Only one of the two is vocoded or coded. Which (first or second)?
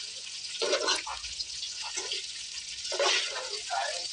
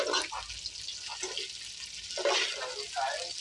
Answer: first